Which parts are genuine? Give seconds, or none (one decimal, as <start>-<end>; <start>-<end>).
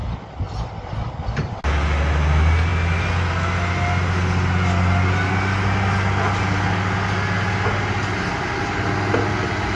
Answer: 0.0-9.8